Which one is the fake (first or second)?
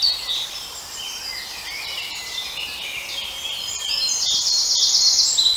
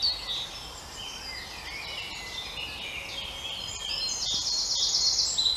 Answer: first